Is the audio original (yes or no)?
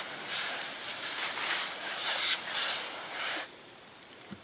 no